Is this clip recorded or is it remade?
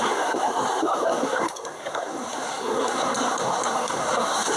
remade